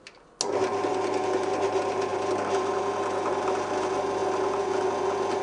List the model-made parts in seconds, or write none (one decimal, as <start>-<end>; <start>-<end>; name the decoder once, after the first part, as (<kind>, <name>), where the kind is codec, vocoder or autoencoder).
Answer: none